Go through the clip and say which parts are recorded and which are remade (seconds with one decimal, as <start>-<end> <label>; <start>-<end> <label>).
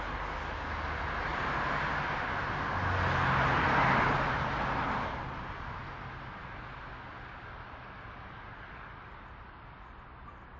0.0-1.3 recorded; 1.3-2.3 remade; 2.3-10.6 recorded